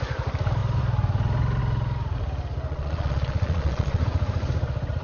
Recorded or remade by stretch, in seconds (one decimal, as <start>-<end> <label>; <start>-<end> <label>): 0.0-2.7 recorded; 2.7-4.0 remade; 4.0-5.0 recorded